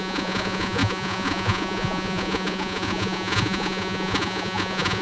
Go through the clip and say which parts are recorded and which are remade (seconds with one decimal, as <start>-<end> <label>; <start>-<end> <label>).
0.0-5.0 remade